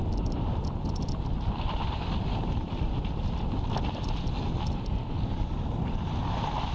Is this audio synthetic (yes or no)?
yes